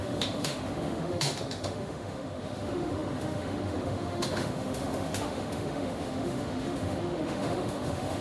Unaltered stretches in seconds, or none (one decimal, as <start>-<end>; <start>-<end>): none